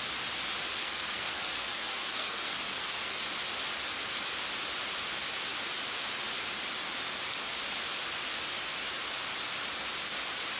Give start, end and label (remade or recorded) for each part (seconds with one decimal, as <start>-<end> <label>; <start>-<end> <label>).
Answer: 0.0-0.8 recorded; 0.8-3.2 remade; 3.2-10.6 recorded